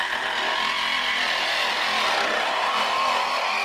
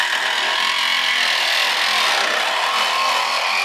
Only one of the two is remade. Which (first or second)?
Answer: first